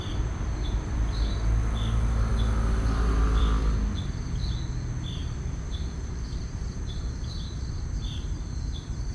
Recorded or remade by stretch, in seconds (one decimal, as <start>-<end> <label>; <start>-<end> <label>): 0.0-5.2 recorded; 5.2-8.6 remade; 8.6-9.1 recorded